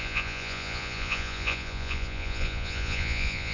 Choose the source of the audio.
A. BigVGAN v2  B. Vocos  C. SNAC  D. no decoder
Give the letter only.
B